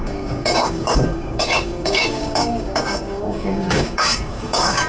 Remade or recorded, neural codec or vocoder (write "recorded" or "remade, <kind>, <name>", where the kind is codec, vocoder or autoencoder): remade, codec, DAC